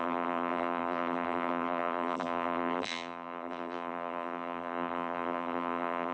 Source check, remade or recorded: remade